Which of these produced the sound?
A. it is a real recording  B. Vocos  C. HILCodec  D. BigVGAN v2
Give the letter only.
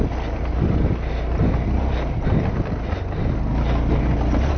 A